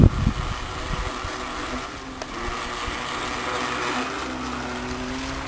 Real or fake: real